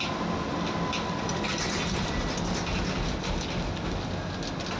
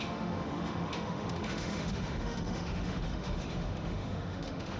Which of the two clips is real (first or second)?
first